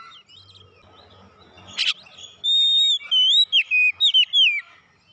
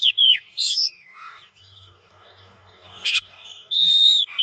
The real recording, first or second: first